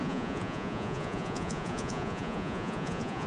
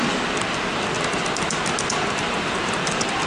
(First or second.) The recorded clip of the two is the second